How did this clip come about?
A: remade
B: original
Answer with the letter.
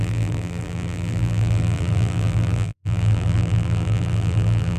A